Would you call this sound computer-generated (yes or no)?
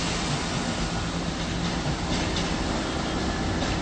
no